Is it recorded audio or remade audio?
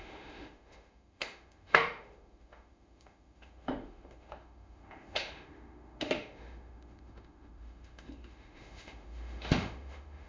remade